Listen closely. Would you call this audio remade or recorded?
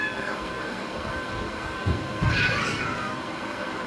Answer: remade